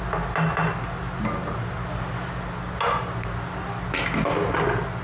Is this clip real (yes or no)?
yes